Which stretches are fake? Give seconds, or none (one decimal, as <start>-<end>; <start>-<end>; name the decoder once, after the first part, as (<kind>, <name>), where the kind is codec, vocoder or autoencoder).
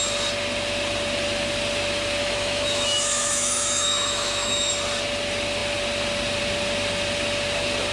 2.2-4.7 (autoencoder, DAC-VAE)